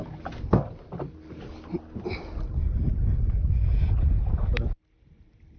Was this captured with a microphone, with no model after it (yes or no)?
yes